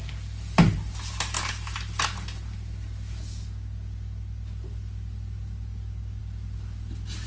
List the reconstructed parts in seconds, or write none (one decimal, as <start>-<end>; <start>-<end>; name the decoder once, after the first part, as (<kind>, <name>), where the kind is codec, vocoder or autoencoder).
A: none